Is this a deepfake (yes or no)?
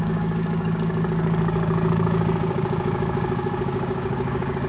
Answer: yes